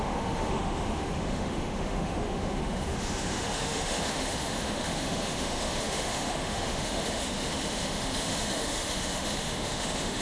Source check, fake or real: fake